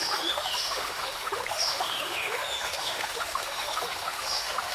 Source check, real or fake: fake